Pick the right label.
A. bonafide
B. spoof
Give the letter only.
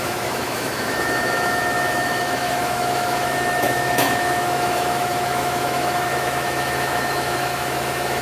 B